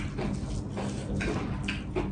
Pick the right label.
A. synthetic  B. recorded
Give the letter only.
B